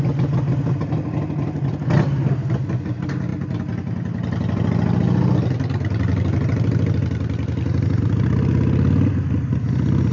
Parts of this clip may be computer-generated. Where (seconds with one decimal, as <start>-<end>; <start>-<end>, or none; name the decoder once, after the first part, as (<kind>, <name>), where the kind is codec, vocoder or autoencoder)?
none